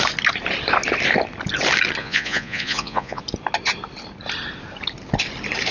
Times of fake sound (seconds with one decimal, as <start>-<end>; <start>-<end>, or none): 2.0-3.2